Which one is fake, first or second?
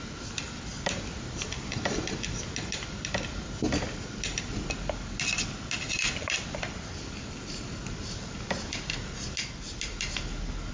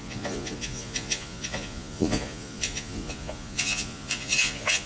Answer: second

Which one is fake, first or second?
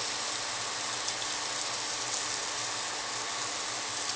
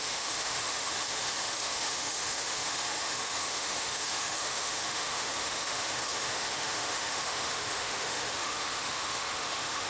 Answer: second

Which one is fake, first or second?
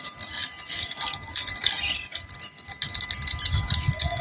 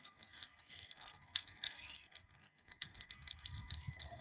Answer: second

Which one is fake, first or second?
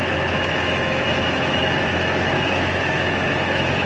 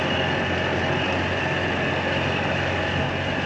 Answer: first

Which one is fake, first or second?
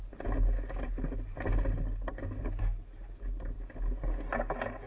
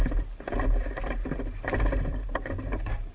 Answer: second